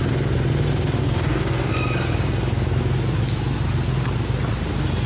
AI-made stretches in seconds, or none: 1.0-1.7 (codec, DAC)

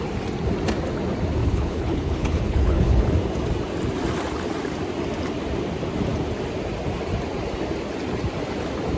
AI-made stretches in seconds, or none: 1.4-3.1 (codec, HILCodec)

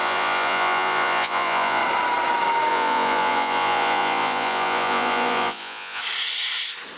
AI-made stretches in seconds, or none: 0.0-1.8 (vocoder, Vocos); 2.7-6.0

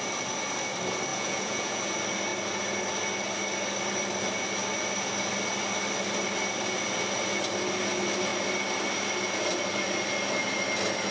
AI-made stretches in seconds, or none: 1.1-1.8 (vocoder, Vocos)

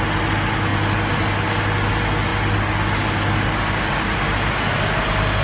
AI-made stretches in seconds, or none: none